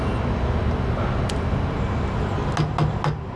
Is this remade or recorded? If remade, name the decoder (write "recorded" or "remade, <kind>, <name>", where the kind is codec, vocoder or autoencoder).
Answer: recorded